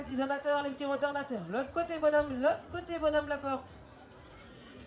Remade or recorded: remade